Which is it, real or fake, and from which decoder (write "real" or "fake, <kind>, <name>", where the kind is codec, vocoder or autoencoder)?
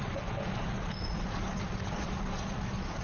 fake, vocoder, Vocos